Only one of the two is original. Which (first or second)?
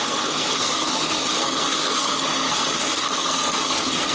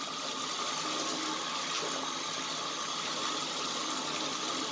second